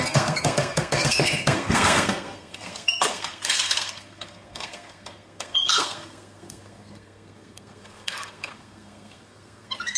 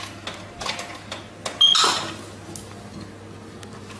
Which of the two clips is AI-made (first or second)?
first